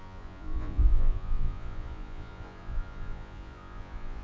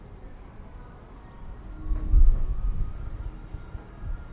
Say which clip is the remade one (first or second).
first